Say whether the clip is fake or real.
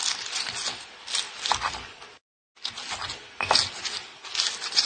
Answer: real